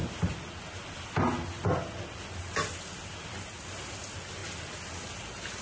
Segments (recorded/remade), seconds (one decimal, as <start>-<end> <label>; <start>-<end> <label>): 0.0-5.6 recorded